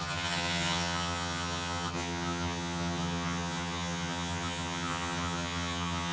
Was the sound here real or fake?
fake